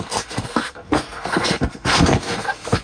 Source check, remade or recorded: remade